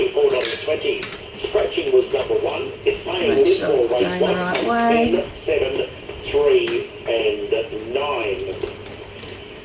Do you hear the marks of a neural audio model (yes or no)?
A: no